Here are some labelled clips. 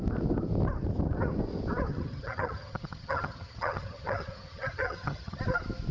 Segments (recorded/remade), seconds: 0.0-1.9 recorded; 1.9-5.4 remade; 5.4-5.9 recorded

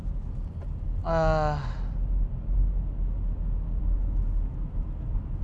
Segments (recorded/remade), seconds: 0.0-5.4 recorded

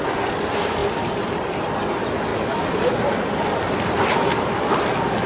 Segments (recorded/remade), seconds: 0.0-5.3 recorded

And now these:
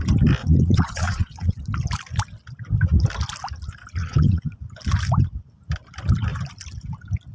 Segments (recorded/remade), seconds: 0.0-0.4 recorded; 0.4-1.6 remade; 1.6-4.0 recorded; 4.0-4.6 remade; 4.6-7.3 recorded